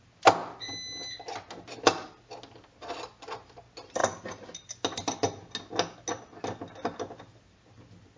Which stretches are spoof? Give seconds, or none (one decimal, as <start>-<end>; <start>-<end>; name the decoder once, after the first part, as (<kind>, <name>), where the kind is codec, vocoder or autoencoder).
none